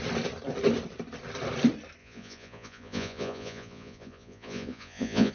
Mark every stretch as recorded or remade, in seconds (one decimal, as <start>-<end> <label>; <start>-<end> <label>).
0.0-2.0 recorded; 2.0-5.3 remade